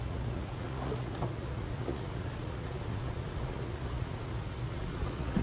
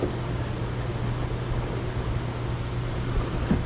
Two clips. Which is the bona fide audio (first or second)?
second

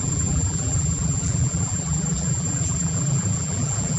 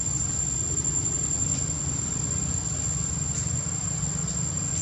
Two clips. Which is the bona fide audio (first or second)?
second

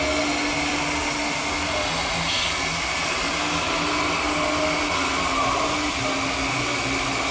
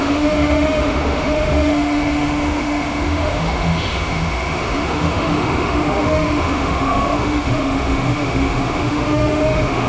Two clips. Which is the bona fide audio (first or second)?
first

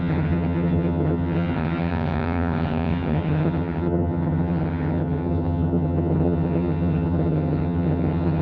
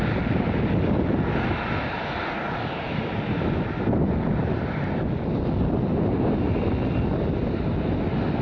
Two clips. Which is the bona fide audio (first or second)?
second